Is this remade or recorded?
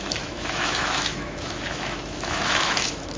remade